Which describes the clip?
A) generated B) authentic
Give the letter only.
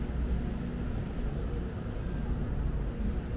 B